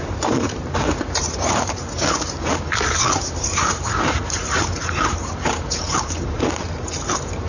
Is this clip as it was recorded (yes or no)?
no